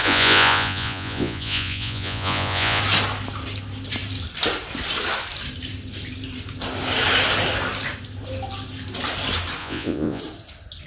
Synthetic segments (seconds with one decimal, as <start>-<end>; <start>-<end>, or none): 0.0-2.8; 9.6-10.2